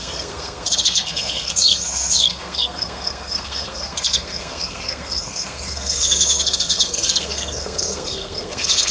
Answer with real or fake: fake